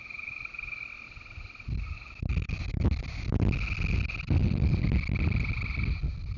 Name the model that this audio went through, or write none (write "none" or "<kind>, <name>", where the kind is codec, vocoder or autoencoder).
none